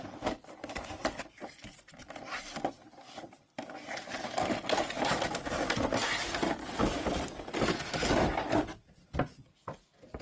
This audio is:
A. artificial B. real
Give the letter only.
B